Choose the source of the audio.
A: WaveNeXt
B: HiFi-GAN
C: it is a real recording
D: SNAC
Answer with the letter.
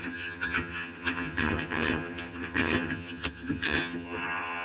B